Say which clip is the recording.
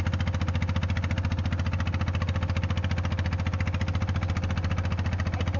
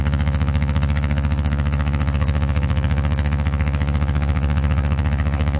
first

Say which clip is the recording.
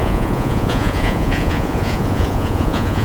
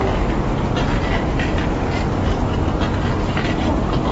second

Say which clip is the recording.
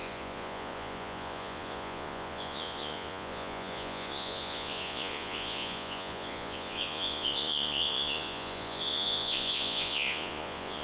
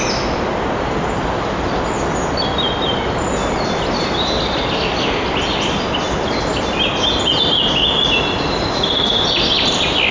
second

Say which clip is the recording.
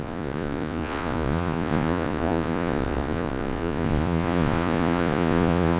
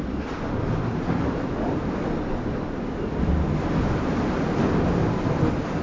second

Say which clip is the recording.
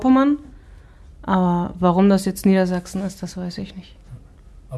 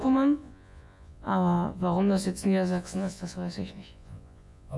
first